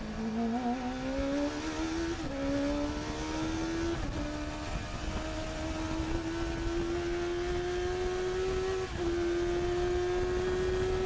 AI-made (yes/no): no